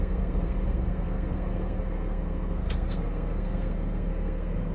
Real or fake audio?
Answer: fake